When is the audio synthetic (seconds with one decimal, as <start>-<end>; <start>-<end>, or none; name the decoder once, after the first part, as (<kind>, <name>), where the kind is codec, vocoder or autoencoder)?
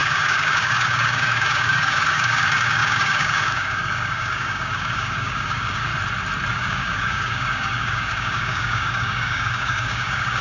0.0-5.9 (codec, DAC); 6.5-10.4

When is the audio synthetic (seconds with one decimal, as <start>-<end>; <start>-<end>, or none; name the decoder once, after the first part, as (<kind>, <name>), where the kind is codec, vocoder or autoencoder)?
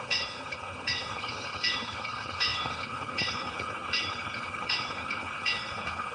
0.0-6.1 (codec, HILCodec)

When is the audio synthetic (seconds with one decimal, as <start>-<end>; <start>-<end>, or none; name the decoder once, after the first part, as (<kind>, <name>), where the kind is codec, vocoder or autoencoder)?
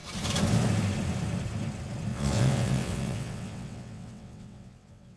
2.1-5.2 (vocoder, WaveNeXt)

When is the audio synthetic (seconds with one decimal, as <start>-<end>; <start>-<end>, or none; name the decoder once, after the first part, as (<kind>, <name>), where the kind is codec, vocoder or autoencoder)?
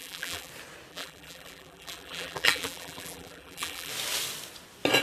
0.0-0.5 (vocoder, BigVGAN v2); 0.9-3.9